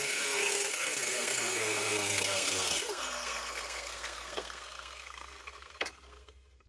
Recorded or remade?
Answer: remade